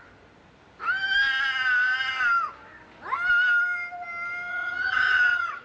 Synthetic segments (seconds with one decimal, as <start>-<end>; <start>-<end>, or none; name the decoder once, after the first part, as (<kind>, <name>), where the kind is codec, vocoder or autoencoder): 4.5-5.6 (vocoder, HiFi-GAN)